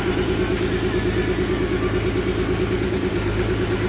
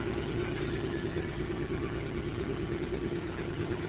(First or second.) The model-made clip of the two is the second